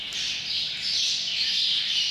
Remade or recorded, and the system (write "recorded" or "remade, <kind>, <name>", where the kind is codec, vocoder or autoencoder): recorded